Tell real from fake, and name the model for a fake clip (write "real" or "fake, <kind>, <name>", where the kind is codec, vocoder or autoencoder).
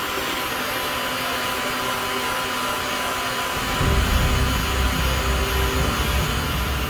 real